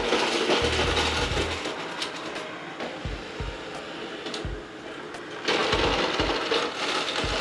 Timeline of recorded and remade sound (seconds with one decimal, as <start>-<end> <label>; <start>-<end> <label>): 0.0-7.4 recorded